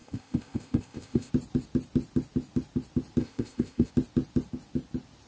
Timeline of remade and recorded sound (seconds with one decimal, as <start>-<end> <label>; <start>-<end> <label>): 0.0-1.3 remade; 1.3-3.2 recorded; 3.2-3.9 remade; 3.9-5.3 recorded